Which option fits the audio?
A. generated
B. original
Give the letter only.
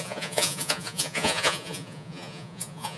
A